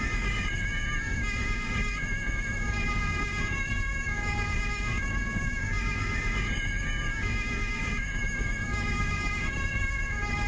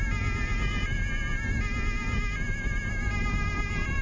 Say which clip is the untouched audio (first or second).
second